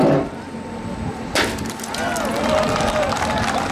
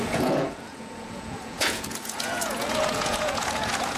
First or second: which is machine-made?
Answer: second